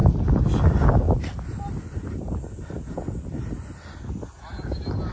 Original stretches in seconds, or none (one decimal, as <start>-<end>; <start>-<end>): 0.0-5.1